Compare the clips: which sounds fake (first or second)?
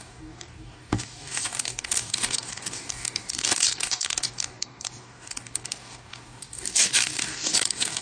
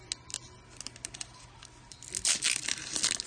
first